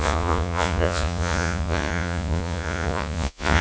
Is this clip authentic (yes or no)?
no